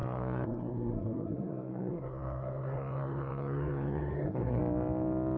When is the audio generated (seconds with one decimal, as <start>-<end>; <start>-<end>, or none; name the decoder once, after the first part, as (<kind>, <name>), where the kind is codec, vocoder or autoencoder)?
0.0-4.6 (codec, SNAC)